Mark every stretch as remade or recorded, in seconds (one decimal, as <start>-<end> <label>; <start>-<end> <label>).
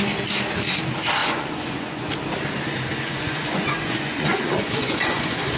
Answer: 0.0-1.2 recorded; 1.2-2.1 remade; 2.1-2.9 recorded; 2.9-5.6 remade